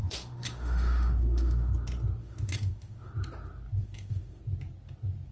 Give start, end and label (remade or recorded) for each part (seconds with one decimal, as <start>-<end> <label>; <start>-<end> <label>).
0.0-1.7 remade; 1.7-2.2 recorded; 2.2-3.1 remade; 3.1-3.8 recorded; 3.8-4.4 remade; 4.4-5.3 recorded